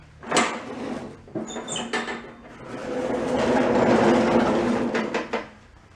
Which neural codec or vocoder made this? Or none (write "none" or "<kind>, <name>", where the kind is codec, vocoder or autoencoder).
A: none